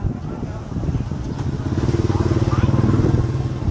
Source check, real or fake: real